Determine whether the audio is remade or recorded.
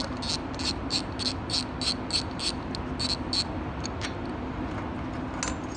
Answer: recorded